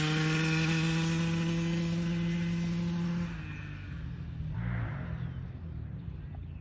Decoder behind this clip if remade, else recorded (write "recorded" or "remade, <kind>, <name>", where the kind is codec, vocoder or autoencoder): recorded